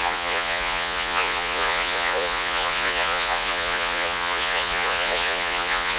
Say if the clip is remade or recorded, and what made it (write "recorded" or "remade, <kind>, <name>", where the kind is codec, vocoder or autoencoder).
remade, vocoder, Vocos